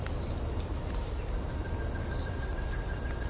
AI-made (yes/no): no